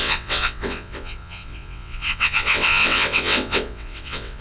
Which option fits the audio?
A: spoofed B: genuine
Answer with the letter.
A